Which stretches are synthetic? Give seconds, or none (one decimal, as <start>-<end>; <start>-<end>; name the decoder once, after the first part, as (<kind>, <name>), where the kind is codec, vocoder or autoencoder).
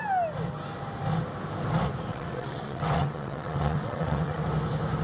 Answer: 2.1-4.4 (vocoder, WaveNeXt)